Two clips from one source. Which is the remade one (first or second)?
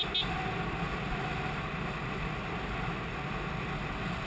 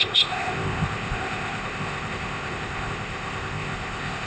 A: second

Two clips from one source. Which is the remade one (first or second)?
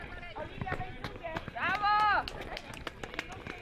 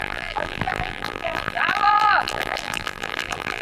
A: second